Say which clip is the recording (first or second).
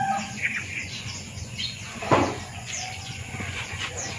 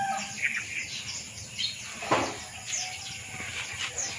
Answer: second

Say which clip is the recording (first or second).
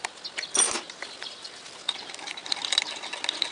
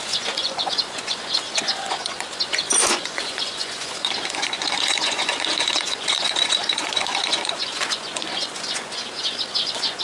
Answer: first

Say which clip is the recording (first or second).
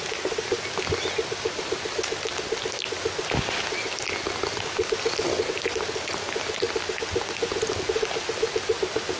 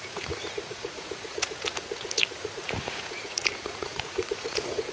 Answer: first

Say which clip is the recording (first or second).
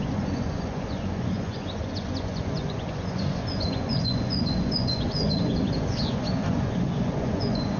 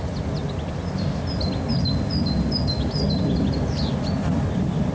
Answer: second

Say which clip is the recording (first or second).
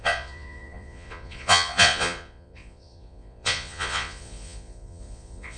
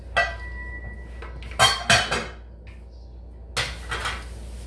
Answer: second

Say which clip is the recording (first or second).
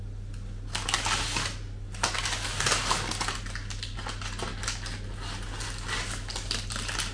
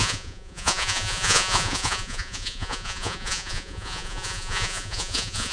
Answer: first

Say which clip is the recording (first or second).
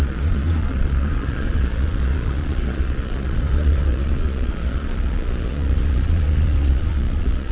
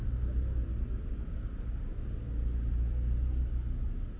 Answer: second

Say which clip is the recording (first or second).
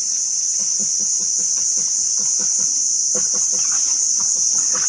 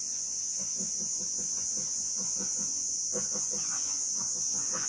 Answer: first